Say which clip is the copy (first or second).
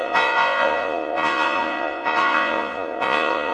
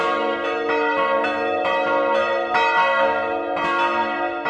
first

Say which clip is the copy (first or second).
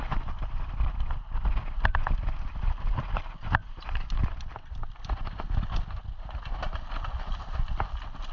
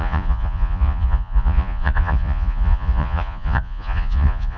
second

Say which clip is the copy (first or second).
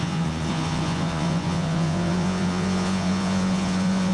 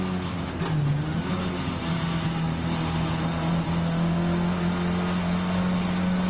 first